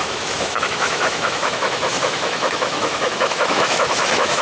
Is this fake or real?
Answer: fake